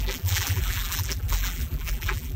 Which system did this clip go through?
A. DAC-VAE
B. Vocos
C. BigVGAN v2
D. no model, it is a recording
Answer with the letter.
C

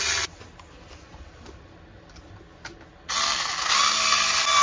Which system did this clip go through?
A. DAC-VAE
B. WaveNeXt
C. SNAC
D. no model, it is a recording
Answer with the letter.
D